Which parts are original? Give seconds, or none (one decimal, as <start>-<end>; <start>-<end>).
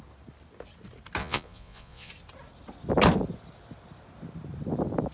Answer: 0.0-1.2; 2.1-5.1